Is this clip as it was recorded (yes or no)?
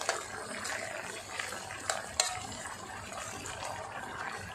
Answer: yes